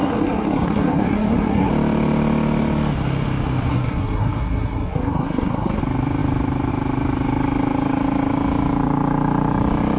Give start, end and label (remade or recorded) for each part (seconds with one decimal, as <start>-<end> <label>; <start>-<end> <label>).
0.0-1.7 remade; 1.7-3.7 recorded; 3.7-5.8 remade; 5.8-10.0 recorded